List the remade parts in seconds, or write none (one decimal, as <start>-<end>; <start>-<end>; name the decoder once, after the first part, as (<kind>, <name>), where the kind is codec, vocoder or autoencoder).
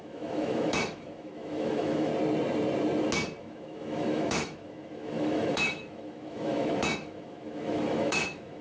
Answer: 0.0-2.1 (autoencoder, DAC-VAE); 3.4-8.6